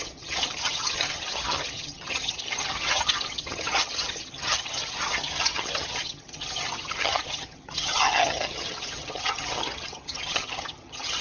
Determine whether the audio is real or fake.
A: fake